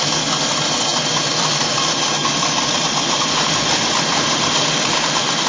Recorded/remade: recorded